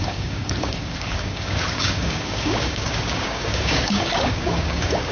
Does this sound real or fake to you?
fake